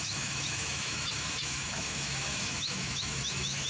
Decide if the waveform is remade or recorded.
remade